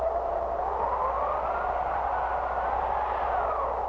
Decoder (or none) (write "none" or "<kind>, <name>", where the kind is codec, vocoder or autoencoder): none